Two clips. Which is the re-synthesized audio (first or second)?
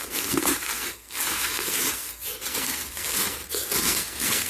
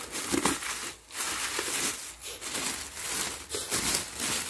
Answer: first